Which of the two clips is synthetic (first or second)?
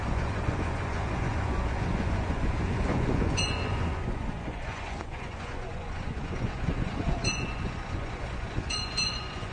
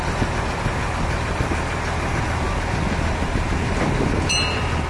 first